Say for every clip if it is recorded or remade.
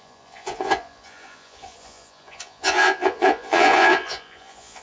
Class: remade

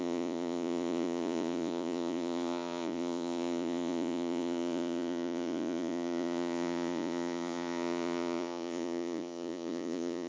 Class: remade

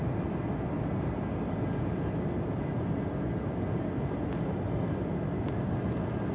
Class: recorded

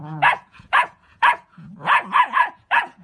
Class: remade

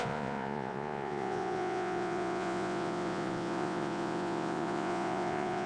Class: remade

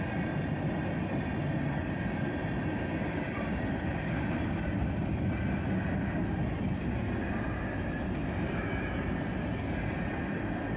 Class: recorded